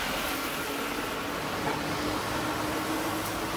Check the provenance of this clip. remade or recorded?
recorded